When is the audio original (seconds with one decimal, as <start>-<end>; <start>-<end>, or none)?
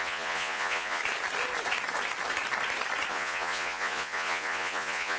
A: 1.0-3.1